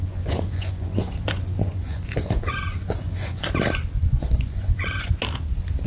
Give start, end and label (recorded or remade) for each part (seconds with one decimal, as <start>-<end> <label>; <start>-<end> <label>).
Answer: 0.0-3.5 remade; 3.5-4.0 recorded; 4.0-5.2 remade; 5.2-5.9 recorded